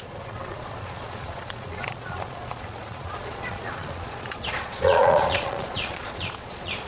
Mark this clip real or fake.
fake